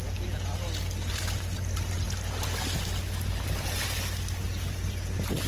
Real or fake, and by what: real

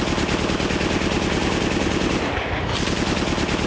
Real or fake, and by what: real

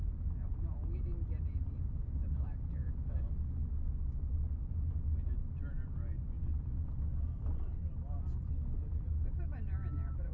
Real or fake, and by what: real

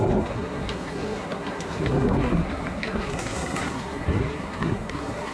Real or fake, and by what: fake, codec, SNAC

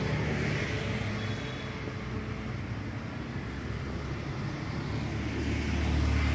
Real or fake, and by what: real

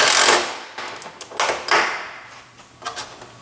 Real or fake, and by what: real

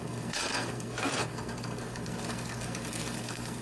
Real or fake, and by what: fake, codec, SNAC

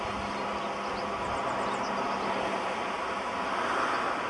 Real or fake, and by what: real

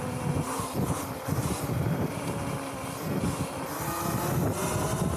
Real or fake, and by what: real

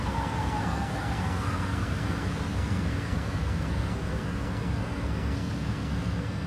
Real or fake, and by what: fake, codec, SNAC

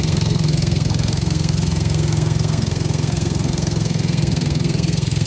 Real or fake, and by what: fake, codec, SNAC